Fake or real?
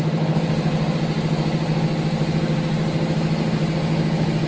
real